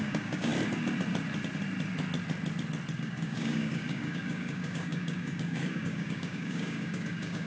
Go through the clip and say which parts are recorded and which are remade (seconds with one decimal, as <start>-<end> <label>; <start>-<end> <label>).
0.0-0.5 remade; 0.5-3.0 recorded; 3.0-7.5 remade